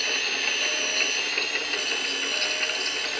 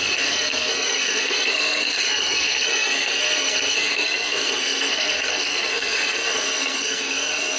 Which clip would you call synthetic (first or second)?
second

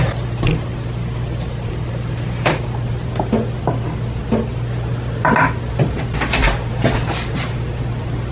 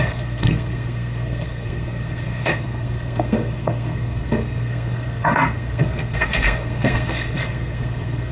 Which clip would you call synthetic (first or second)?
second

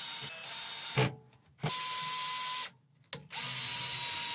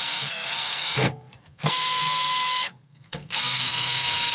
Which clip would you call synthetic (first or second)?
second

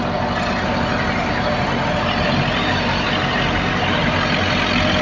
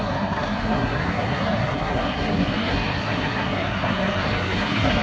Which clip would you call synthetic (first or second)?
second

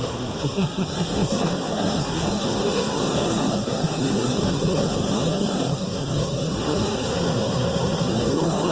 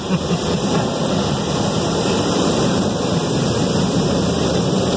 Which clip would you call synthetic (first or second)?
first